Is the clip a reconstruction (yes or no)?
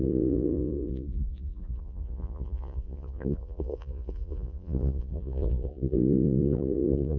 yes